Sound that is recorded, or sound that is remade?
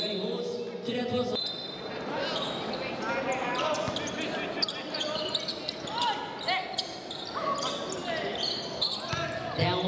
recorded